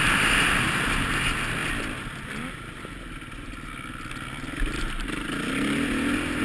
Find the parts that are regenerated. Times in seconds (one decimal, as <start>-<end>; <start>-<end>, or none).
none